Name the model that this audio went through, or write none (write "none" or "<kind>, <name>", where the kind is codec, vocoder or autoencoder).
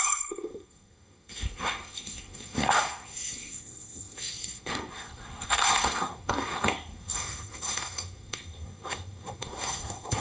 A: codec, SNAC